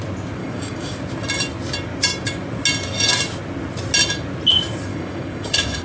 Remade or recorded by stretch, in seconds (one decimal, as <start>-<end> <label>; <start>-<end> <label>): 0.0-0.4 recorded; 0.4-1.0 remade; 1.0-4.9 recorded; 4.9-5.8 remade